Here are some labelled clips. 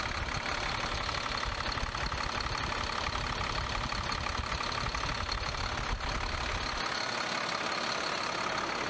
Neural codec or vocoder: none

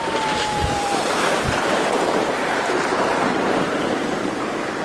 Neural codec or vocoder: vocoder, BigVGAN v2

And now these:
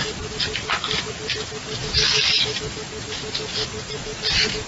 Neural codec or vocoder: none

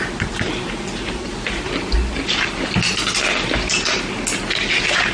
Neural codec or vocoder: none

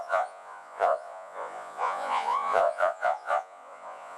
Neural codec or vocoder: vocoder, Vocos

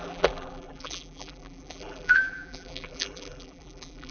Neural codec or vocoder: vocoder, BigVGAN v2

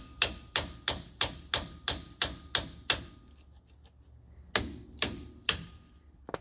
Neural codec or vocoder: none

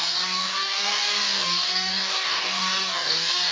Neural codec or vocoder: codec, DAC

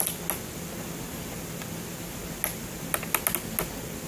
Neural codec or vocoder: none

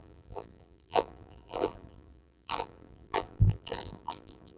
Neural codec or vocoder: vocoder, BigVGAN v2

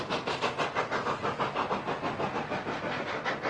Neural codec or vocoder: none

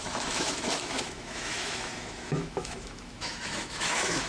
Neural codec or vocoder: autoencoder, DAC-VAE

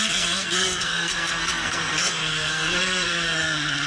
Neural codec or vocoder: codec, SNAC